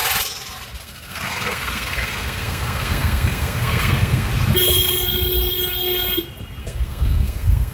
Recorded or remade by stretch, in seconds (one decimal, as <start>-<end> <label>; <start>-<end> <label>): 0.0-0.8 recorded; 0.8-4.3 remade; 4.3-6.6 recorded; 6.6-7.7 remade